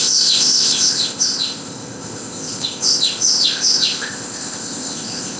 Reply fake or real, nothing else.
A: fake